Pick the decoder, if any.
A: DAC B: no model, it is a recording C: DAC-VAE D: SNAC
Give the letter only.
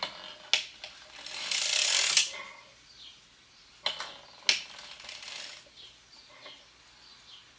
B